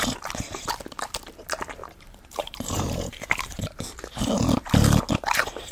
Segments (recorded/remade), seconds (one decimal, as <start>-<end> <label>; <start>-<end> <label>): 0.0-1.8 recorded; 1.8-3.2 remade; 3.2-5.7 recorded